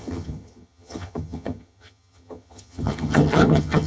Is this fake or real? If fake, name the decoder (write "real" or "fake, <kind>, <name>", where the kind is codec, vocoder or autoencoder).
fake, vocoder, HiFi-GAN